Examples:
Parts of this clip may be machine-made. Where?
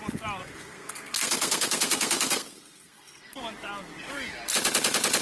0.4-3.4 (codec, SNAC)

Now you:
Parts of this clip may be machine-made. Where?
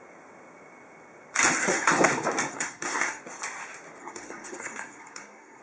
1.6-2.1 (codec, SNAC); 2.5-3.2; 4.0-5.6